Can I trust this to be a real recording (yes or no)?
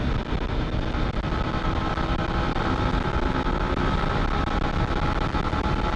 yes